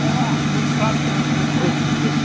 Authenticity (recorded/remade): recorded